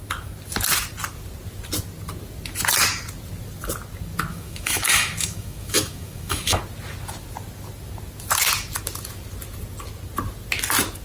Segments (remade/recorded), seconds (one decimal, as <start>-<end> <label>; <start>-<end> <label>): 0.0-4.3 recorded; 4.3-6.6 remade; 6.6-11.0 recorded